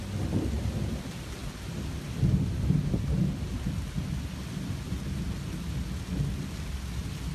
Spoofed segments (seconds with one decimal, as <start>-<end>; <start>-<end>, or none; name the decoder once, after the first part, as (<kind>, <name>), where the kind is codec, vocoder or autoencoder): none